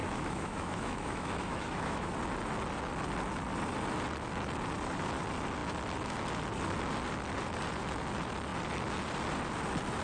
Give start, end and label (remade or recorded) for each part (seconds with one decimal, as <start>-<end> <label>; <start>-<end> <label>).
0.0-2.1 remade; 2.1-10.0 recorded